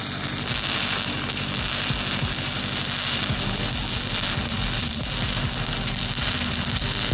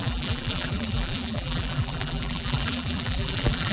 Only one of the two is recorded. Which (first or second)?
first